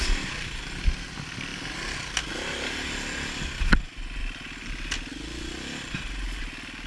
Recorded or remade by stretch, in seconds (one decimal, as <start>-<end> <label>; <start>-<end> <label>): 0.0-4.2 recorded; 4.2-4.7 remade; 4.7-6.9 recorded